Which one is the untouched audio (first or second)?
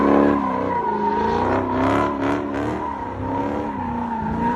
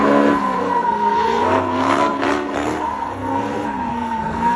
first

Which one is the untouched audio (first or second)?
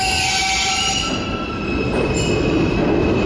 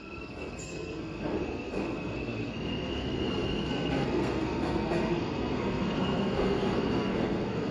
first